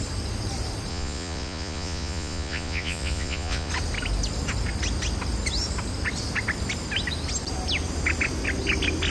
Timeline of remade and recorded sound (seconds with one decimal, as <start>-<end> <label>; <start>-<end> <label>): 0.0-0.9 recorded; 0.9-3.7 remade; 3.7-9.1 recorded